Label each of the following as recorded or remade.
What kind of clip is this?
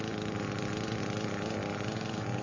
recorded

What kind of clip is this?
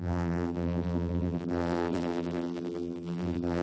remade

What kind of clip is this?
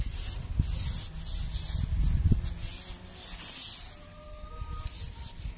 recorded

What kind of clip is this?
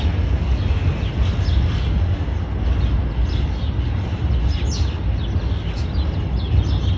recorded